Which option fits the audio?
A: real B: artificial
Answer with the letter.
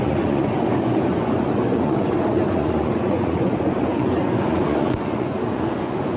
B